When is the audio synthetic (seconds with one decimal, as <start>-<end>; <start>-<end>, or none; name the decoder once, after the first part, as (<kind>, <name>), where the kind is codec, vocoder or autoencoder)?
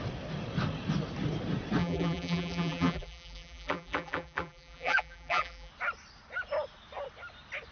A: 1.8-5.7 (vocoder, BigVGAN v2)